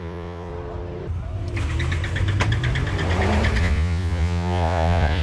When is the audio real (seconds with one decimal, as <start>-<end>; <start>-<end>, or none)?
0.5-3.6